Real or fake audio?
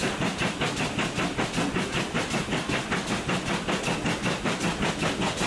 real